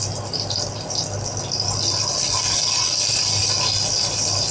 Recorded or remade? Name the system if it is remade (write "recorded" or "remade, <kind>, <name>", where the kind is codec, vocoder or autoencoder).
recorded